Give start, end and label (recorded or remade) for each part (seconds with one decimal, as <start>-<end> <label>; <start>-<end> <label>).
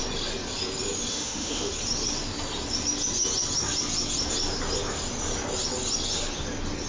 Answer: 0.0-1.1 recorded; 1.1-1.7 remade; 1.7-6.9 recorded